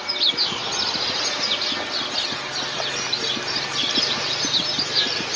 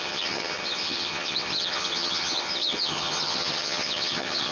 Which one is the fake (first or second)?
second